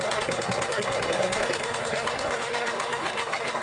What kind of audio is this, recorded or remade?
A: remade